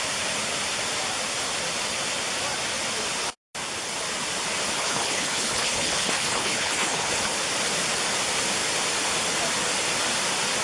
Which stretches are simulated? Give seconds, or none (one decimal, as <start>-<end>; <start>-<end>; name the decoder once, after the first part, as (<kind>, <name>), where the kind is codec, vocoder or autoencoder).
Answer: 4.8-7.1 (codec, HILCodec)